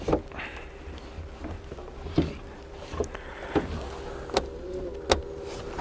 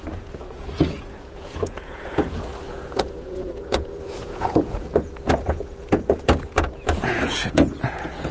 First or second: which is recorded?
first